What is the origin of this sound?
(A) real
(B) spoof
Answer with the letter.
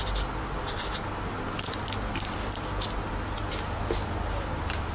A